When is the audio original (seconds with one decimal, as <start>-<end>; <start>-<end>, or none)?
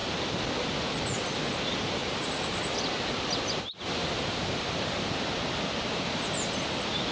0.0-2.0; 2.6-4.0; 5.2-7.1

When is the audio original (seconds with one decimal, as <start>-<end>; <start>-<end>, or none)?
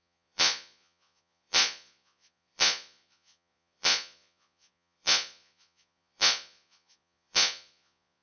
none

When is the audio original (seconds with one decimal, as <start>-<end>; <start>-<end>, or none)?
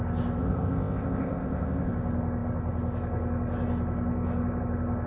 0.0-0.4; 1.9-5.1